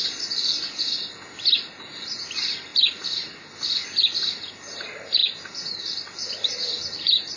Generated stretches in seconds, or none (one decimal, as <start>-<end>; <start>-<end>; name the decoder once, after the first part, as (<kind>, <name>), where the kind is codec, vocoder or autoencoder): 5.2-7.4 (vocoder, BigVGAN v2)